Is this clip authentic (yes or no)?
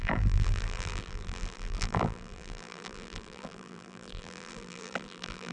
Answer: no